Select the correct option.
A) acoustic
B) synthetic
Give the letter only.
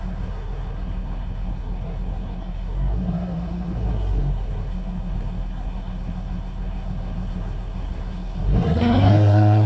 B